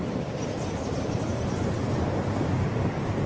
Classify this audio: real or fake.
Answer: real